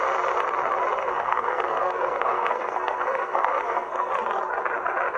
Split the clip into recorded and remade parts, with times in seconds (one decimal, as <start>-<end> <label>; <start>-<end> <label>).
0.0-1.0 recorded; 1.0-4.1 remade; 4.1-5.2 recorded